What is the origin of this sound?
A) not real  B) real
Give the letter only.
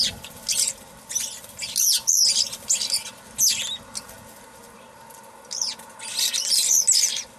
B